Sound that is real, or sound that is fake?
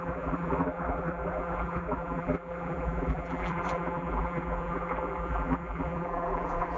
fake